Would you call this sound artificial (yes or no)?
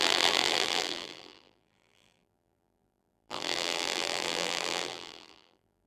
yes